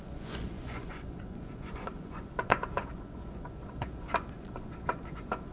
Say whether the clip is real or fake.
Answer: fake